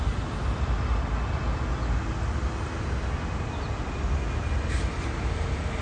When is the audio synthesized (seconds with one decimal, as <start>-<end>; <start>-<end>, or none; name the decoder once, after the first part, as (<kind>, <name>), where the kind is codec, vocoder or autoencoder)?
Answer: none